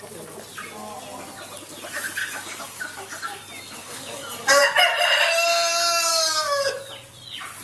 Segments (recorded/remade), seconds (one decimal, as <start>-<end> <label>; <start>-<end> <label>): 0.0-2.2 recorded; 2.2-3.4 remade; 3.4-3.8 recorded; 3.8-4.6 remade; 4.6-6.1 recorded; 6.1-6.8 remade; 6.8-7.6 recorded